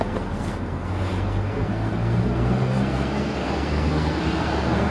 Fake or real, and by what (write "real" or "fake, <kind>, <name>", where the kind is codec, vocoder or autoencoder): fake, codec, SNAC